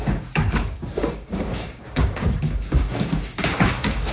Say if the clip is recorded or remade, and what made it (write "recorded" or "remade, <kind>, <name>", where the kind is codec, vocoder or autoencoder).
remade, codec, DAC